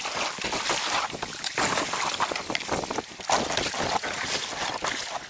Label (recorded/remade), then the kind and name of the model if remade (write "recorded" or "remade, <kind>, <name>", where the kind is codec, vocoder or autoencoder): recorded